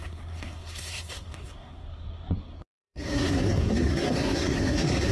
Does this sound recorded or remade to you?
remade